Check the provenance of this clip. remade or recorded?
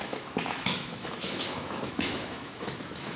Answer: remade